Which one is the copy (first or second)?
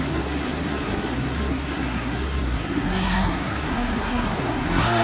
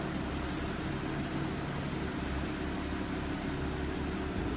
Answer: first